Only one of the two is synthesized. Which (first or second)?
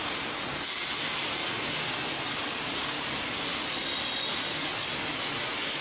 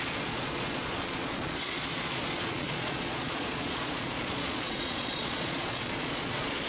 second